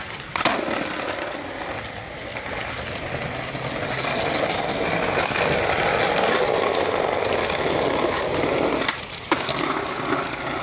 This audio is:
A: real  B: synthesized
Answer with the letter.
A